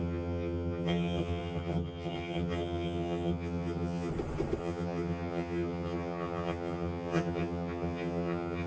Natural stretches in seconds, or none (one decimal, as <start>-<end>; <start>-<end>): 4.1-4.6